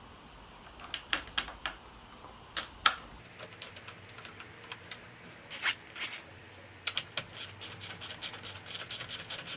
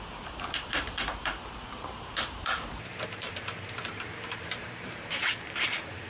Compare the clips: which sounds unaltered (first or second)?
first